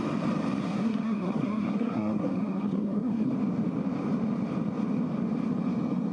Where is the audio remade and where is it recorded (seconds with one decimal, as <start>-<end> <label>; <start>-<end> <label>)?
0.0-0.6 recorded; 0.6-3.3 remade; 3.3-6.1 recorded

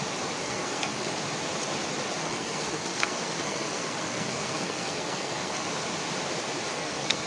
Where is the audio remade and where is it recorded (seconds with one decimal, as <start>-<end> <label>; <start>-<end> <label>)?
0.0-0.4 recorded; 0.4-1.1 remade; 1.1-2.2 recorded; 2.2-5.7 remade; 5.7-6.7 recorded; 6.7-7.3 remade